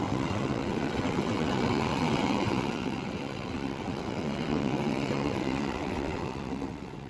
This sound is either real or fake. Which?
fake